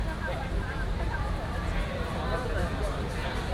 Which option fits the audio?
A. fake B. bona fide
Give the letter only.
A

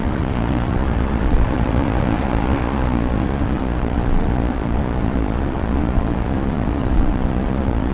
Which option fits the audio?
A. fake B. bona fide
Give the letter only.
A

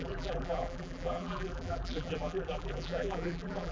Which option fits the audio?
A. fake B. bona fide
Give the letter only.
A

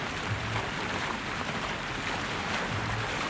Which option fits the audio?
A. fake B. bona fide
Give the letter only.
B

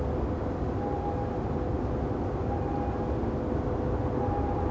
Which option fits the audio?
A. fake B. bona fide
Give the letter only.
B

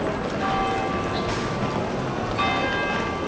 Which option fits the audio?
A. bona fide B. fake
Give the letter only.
A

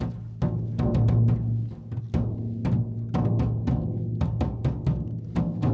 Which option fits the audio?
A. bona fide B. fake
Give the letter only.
A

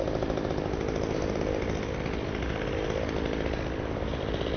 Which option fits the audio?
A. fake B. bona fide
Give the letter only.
B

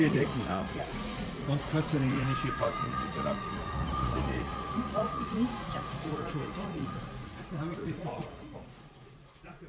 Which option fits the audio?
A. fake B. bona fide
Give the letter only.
A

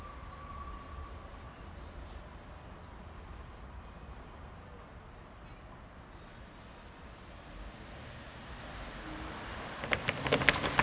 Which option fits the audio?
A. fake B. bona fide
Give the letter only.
B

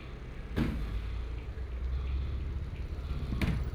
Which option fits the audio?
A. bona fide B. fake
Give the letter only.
A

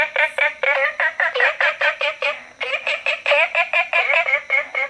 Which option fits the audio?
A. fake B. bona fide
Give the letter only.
A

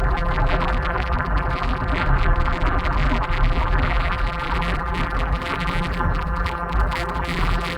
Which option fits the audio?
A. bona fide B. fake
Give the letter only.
B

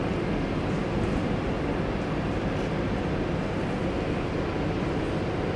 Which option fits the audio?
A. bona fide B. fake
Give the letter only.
A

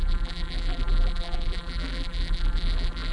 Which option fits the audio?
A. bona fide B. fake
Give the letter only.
B